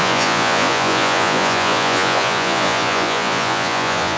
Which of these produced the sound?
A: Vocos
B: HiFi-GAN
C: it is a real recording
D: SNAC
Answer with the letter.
A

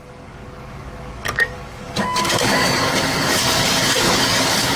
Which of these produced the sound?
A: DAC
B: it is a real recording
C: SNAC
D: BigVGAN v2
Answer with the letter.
A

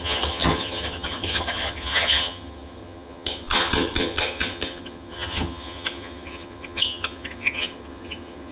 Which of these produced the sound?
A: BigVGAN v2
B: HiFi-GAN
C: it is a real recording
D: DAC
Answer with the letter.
B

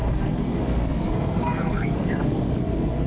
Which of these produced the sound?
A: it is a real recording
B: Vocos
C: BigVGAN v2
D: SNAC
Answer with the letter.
D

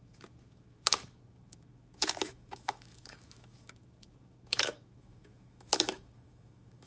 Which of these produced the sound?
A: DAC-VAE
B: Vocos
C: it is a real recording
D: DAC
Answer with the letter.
A